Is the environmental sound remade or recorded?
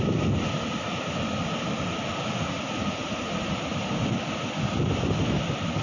recorded